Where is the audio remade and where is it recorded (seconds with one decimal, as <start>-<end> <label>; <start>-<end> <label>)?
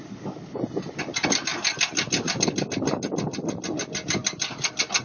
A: 0.0-5.0 recorded